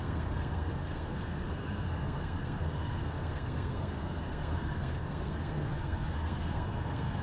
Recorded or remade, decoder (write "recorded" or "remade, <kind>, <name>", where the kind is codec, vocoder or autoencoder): remade, codec, SNAC